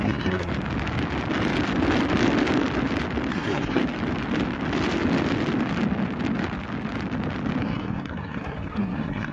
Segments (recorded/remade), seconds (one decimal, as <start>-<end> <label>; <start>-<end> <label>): 0.0-0.5 remade; 0.5-3.3 recorded; 3.3-3.8 remade; 3.8-7.6 recorded; 7.6-9.3 remade